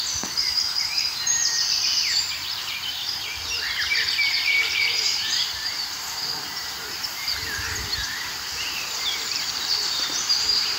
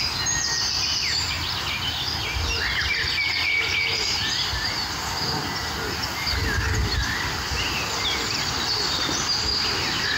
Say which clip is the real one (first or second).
second